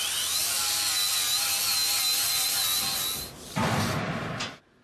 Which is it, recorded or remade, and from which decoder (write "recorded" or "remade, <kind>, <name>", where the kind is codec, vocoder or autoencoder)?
recorded